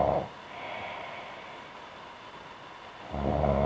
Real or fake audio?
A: real